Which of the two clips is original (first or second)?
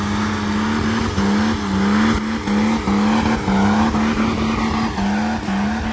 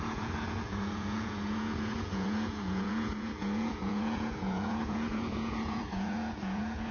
first